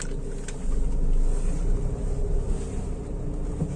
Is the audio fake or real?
real